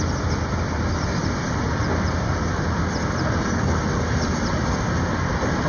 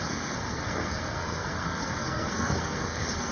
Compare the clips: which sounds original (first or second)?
first